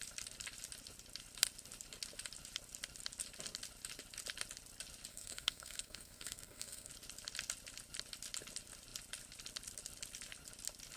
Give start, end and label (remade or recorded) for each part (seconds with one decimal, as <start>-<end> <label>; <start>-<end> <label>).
0.0-5.1 recorded; 5.1-6.9 remade; 6.9-11.0 recorded